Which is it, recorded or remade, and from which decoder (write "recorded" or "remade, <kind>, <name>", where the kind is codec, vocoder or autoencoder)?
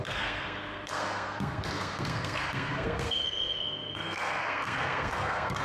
remade, codec, SNAC